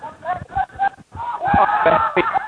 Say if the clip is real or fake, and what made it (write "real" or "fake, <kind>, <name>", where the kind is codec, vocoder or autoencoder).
real